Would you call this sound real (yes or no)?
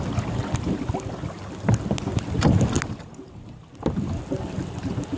yes